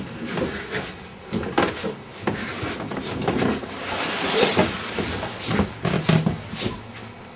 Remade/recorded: recorded